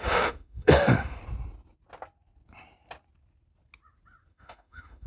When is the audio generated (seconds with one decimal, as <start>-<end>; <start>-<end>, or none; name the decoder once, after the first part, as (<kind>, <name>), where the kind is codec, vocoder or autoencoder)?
0.0-1.2 (autoencoder, DAC-VAE); 4.3-5.1